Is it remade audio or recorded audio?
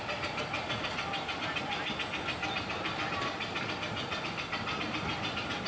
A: recorded